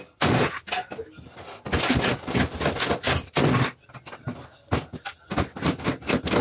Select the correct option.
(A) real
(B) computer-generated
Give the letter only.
A